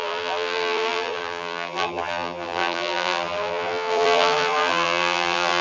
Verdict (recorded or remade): remade